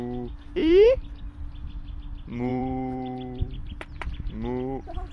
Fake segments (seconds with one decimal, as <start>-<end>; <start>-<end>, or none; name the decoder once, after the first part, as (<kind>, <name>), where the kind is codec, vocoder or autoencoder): 0.6-1.2 (vocoder, BigVGAN v2); 2.5-4.3